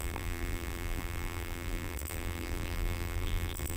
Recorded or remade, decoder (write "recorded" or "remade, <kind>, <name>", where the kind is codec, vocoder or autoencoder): remade, vocoder, BigVGAN v2